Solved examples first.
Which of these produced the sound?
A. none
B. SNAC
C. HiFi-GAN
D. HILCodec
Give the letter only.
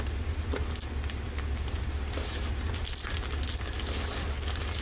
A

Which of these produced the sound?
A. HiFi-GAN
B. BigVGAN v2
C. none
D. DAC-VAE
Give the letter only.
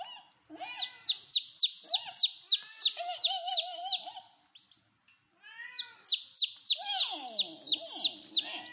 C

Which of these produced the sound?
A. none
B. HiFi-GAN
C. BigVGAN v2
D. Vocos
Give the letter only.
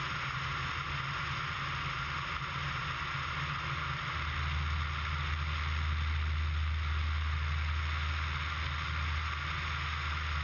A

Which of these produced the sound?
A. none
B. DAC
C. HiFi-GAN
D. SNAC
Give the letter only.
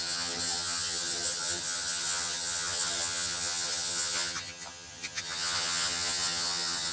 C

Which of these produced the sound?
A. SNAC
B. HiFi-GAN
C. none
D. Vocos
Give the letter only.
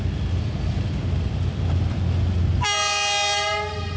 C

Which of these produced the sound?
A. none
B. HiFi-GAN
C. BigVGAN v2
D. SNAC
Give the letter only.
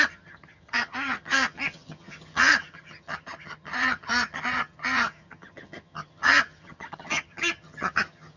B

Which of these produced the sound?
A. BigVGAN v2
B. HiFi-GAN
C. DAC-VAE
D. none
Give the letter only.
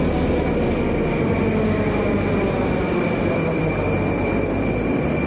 D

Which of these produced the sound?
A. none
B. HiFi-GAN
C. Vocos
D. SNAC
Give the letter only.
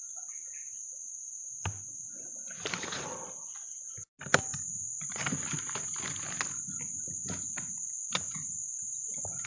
A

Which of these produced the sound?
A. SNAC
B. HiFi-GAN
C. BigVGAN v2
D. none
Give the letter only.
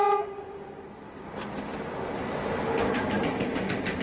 D